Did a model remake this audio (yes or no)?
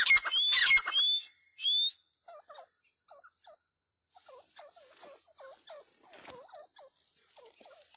no